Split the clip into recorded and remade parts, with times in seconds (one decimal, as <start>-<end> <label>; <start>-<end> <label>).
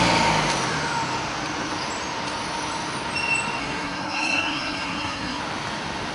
0.0-3.6 recorded; 3.6-5.4 remade; 5.4-6.1 recorded